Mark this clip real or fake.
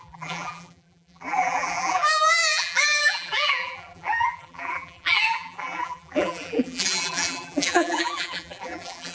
fake